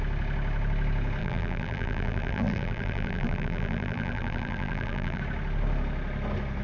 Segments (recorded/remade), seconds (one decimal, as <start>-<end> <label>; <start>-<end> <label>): 0.0-1.2 recorded; 1.2-5.2 remade; 5.2-6.6 recorded